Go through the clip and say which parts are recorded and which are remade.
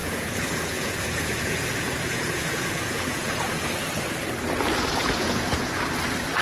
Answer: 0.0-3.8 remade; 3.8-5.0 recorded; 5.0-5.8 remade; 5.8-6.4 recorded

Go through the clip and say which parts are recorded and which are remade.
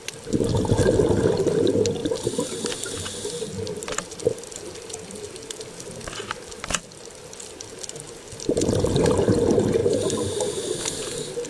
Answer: 0.0-2.0 recorded; 2.0-2.7 remade; 2.7-9.8 recorded; 9.8-10.8 remade; 10.8-11.5 recorded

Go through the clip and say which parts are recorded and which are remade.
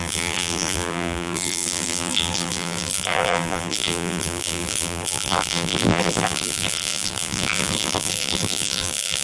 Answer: 0.0-9.2 remade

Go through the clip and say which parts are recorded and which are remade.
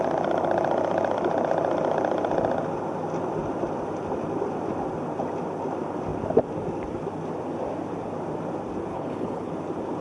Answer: 0.0-8.9 recorded; 8.9-9.5 remade; 9.5-10.0 recorded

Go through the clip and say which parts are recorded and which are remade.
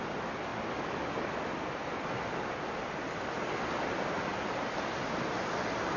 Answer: 0.0-6.0 recorded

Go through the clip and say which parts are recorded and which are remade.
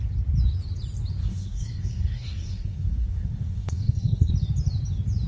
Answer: 0.0-1.2 recorded; 1.2-4.3 remade; 4.3-5.3 recorded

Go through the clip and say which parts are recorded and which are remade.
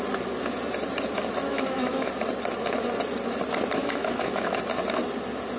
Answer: 0.0-1.5 recorded; 1.5-2.1 remade; 2.1-3.8 recorded; 3.8-4.6 remade; 4.6-5.6 recorded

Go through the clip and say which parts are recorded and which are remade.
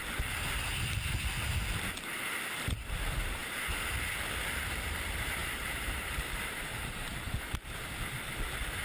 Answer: 0.0-5.4 recorded; 5.4-7.1 remade; 7.1-8.8 recorded